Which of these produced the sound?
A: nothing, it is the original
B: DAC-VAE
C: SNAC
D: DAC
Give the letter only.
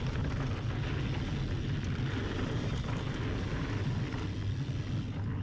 A